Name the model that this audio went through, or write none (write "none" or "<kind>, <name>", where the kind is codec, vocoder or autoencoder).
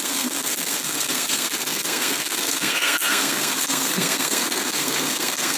codec, SNAC